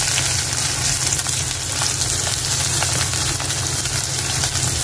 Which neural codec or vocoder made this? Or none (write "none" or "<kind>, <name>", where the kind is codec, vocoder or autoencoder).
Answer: none